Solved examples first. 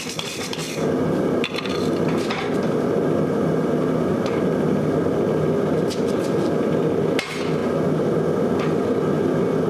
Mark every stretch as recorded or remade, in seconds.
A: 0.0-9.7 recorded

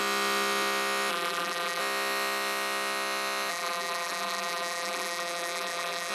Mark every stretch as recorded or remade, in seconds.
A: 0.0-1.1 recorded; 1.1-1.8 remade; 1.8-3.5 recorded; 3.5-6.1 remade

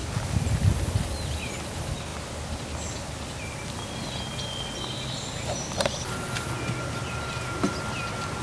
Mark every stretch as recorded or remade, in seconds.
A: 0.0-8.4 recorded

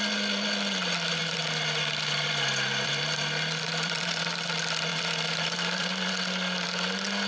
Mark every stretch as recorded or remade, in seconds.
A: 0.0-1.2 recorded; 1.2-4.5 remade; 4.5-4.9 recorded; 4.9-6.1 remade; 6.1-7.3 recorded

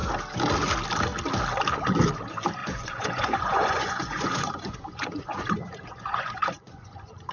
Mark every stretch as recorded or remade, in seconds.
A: 0.0-2.6 recorded; 2.6-7.3 remade

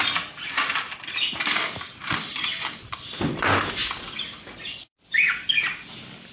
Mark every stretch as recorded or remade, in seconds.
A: 0.0-6.3 recorded

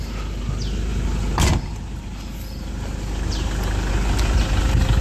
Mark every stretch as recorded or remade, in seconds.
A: 0.0-5.0 recorded